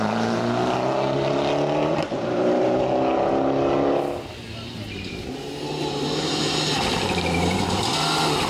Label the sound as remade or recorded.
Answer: recorded